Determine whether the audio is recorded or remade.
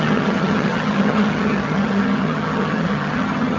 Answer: remade